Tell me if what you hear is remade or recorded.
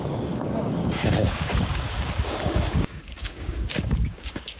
remade